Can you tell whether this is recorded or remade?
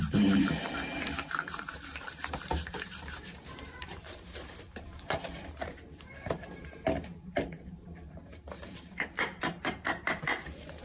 remade